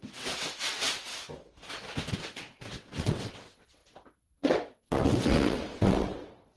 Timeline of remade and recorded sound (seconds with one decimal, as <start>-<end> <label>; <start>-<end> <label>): 0.0-1.1 remade; 1.1-2.1 recorded; 2.1-6.6 remade